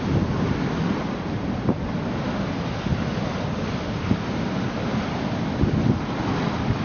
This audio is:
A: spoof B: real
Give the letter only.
B